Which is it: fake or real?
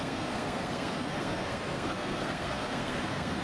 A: fake